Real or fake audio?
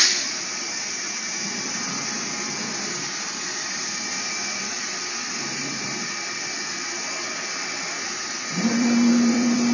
fake